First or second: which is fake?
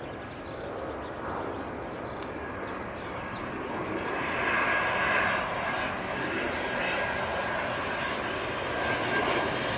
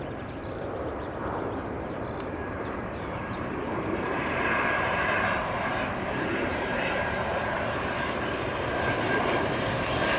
second